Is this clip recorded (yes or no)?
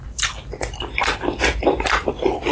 yes